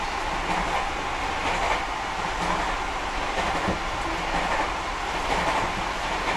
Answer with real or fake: real